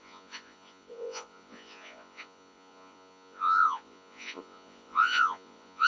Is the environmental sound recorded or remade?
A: remade